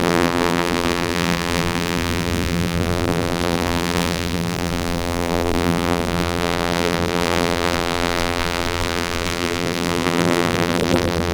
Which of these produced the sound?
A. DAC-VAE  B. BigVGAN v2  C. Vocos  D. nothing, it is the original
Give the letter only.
B